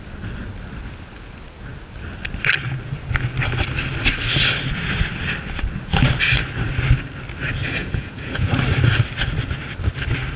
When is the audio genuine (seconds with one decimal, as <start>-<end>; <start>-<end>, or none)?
0.0-7.8; 8.5-10.4